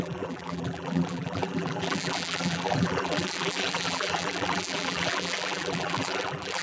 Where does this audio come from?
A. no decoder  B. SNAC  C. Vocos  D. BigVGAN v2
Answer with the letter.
D